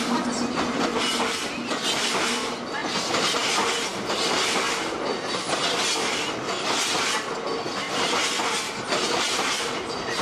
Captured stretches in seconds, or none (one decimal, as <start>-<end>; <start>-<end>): 0.0-10.2